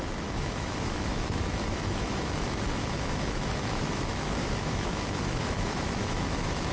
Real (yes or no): no